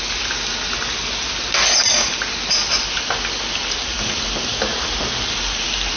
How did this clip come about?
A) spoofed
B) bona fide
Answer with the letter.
B